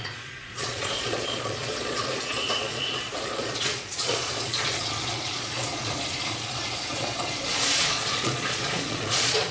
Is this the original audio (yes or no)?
no